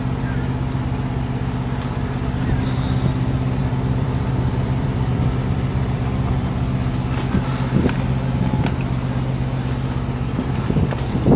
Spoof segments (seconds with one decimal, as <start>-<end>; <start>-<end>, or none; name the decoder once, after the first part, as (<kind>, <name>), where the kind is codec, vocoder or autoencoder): 3.6-6.6 (vocoder, BigVGAN v2)